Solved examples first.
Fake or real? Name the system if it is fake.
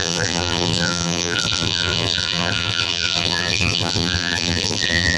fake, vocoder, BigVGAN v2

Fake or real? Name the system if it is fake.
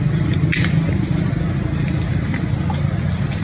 real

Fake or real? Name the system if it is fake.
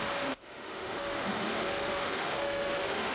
fake, autoencoder, DAC-VAE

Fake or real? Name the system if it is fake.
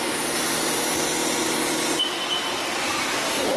real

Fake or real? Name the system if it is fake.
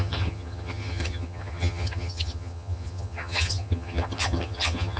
fake, vocoder, HiFi-GAN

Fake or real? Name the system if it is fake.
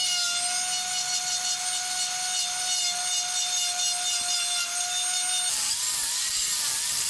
real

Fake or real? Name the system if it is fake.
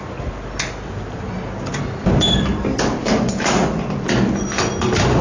real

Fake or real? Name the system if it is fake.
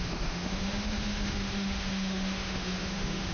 fake, autoencoder, DAC-VAE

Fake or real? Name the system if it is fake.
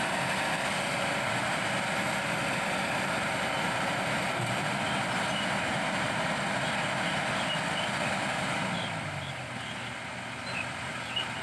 real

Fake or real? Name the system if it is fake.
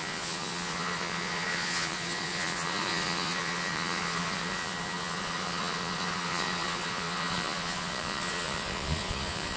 fake, vocoder, Vocos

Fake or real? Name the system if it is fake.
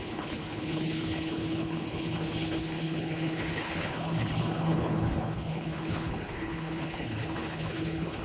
fake, codec, HILCodec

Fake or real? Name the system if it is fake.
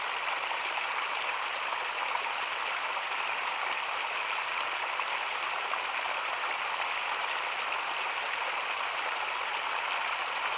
real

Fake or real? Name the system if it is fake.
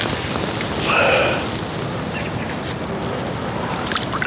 real